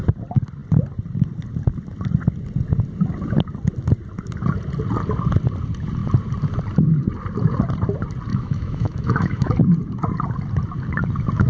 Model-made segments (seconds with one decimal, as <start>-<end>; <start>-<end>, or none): 8.3-9.5